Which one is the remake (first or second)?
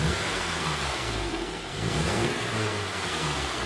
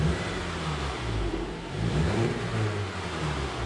first